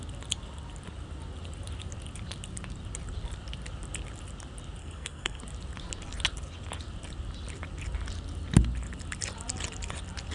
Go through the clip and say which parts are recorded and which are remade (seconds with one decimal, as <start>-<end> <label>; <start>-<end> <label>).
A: 0.0-4.8 recorded; 4.8-5.4 remade; 5.4-10.3 recorded